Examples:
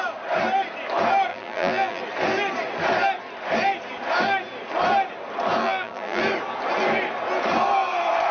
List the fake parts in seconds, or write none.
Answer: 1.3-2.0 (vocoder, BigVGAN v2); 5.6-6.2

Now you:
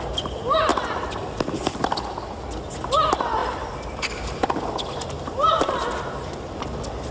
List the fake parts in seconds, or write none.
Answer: none

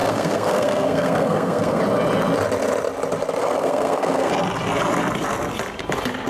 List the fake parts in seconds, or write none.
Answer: 0.0-1.8 (codec, SNAC); 3.4-4.3

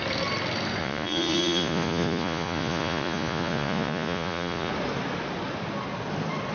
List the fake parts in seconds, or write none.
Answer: 0.8-4.7 (vocoder, Vocos)